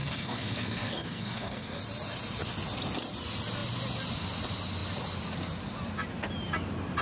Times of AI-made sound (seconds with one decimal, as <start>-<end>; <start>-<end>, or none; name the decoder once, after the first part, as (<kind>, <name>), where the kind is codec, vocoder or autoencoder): 0.0-1.8 (codec, SNAC)